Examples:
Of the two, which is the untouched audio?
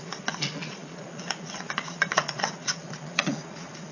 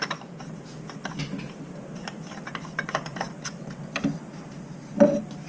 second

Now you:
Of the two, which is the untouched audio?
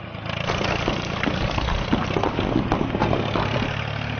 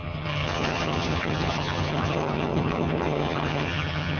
first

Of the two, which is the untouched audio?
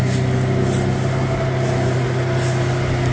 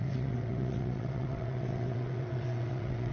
first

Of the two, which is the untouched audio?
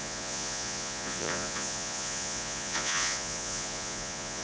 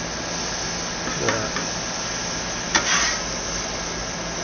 second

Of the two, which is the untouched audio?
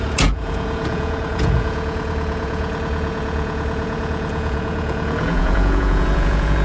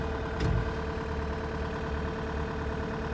second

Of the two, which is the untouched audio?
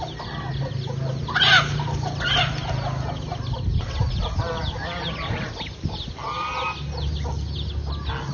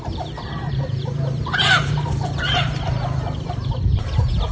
first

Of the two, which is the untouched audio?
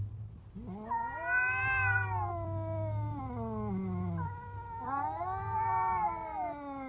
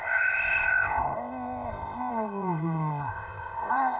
first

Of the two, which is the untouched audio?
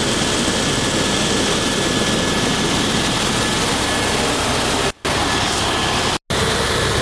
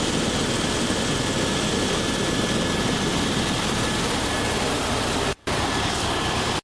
first